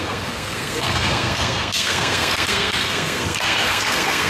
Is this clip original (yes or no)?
no